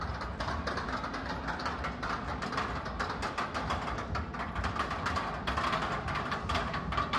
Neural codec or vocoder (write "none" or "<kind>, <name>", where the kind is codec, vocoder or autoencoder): vocoder, BigVGAN v2